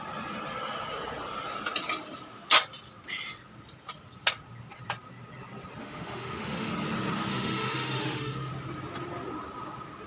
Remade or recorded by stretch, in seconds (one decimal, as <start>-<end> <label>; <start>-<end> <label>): 0.0-5.8 recorded; 5.8-6.7 remade; 6.7-7.3 recorded; 7.3-8.5 remade; 8.5-10.1 recorded